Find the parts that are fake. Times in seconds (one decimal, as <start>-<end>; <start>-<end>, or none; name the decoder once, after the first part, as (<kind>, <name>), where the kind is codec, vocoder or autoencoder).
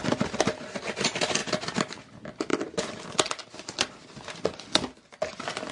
1.4-2.1 (vocoder, BigVGAN v2)